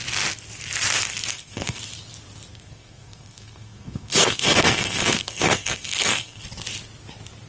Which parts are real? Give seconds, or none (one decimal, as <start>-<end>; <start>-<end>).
0.0-1.3; 1.8-2.5; 6.4-7.5